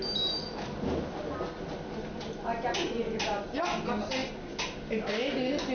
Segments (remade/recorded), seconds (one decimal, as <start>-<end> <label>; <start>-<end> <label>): 0.0-5.7 recorded